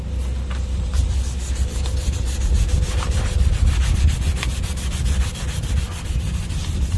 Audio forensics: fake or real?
real